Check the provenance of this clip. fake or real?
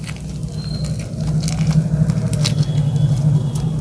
real